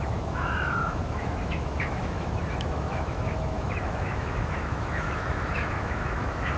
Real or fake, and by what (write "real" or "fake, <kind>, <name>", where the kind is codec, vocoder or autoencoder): fake, autoencoder, DAC-VAE